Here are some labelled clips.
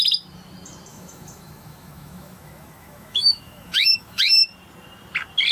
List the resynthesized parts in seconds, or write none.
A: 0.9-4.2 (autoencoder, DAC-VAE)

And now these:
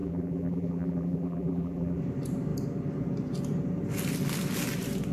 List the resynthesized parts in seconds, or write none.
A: 0.0-2.0 (vocoder, BigVGAN v2)

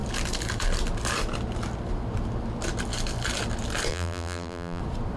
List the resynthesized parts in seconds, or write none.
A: 3.9-4.8 (vocoder, BigVGAN v2)